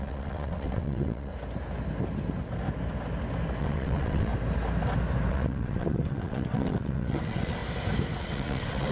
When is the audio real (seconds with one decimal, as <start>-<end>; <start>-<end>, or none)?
1.3-3.6; 4.3-5.3; 7.6-8.2